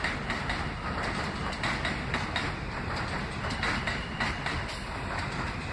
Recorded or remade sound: recorded